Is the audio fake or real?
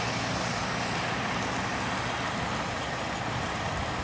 real